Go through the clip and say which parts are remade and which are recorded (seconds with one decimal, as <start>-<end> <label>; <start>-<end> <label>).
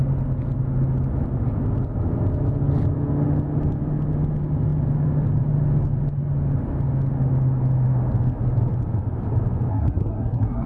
0.0-9.7 recorded; 9.7-10.7 remade